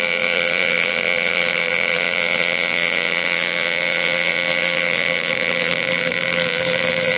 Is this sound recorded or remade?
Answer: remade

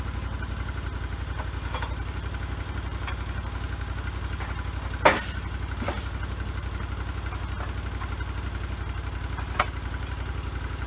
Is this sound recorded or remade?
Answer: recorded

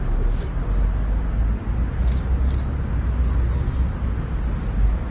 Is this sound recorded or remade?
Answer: recorded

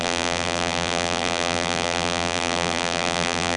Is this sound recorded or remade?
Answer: remade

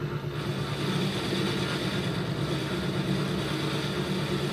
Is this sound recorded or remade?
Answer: recorded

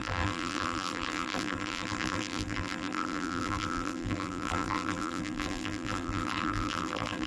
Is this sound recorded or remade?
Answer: remade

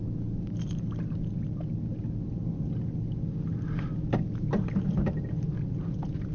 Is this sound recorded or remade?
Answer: recorded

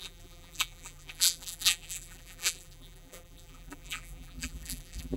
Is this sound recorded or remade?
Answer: remade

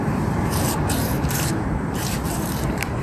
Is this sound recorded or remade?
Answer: remade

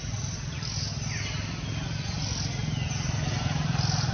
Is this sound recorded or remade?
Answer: recorded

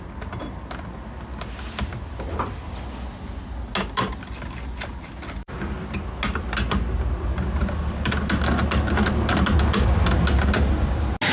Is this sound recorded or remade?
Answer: recorded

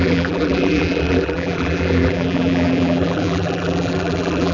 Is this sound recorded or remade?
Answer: remade